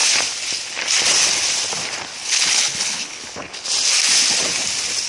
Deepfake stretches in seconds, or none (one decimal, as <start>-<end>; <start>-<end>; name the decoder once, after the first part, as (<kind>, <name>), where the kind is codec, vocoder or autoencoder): 2.2-3.7 (codec, HILCodec)